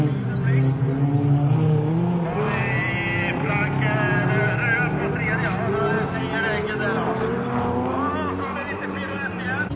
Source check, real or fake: real